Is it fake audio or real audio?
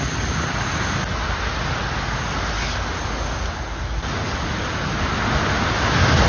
real